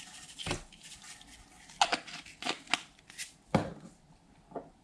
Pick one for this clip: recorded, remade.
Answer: recorded